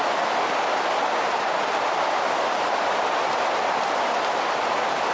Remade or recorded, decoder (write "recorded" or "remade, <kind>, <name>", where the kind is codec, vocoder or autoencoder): recorded